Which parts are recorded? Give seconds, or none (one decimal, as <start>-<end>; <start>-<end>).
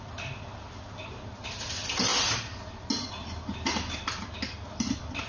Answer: 0.0-5.3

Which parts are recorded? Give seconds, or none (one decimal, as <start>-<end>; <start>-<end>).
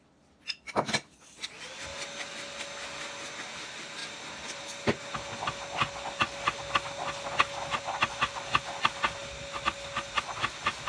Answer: 0.0-10.9